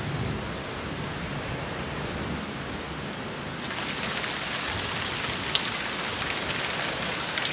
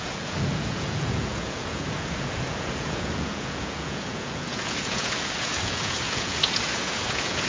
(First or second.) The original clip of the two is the first